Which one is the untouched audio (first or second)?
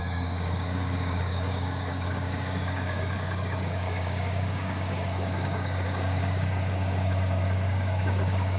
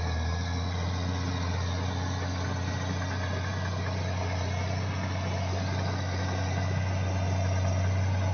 second